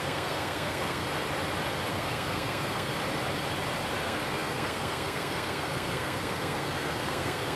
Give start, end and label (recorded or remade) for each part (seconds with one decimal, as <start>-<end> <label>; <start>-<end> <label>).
0.0-1.0 remade; 1.0-1.9 recorded; 1.9-2.9 remade; 2.9-4.0 recorded; 4.0-7.6 remade

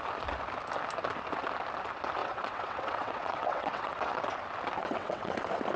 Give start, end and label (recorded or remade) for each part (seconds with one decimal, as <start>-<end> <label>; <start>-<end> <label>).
0.0-2.2 recorded; 2.2-4.2 remade; 4.2-4.8 recorded; 4.8-5.3 remade; 5.3-5.8 recorded

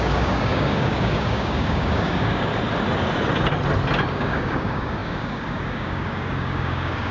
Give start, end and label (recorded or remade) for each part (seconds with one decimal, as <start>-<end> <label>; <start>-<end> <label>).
0.0-2.5 remade; 2.5-4.1 recorded; 4.1-7.1 remade

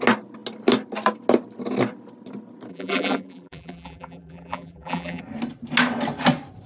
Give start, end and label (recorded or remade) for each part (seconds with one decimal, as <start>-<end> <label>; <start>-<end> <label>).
0.0-2.7 recorded; 2.7-5.2 remade; 5.2-6.7 recorded

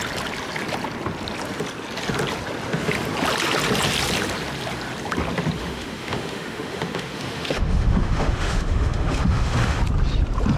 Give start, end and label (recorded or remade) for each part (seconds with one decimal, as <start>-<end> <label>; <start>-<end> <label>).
0.0-5.6 recorded; 5.6-9.8 remade; 9.8-10.6 recorded

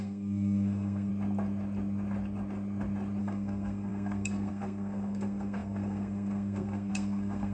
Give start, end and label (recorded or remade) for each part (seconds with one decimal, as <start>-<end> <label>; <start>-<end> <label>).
0.0-1.1 remade; 1.1-3.2 recorded; 3.2-7.5 remade

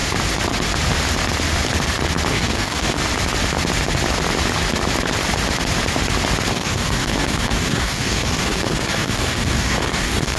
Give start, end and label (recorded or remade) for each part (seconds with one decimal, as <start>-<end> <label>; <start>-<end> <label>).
0.0-2.3 recorded; 2.3-3.0 remade; 3.0-6.5 recorded; 6.5-10.4 remade

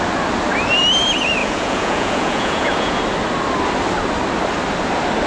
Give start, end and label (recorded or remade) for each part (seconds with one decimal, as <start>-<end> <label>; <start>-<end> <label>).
0.0-1.4 recorded; 1.4-3.0 remade; 3.0-5.3 recorded